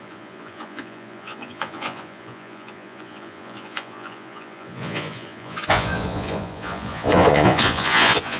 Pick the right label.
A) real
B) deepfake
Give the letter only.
B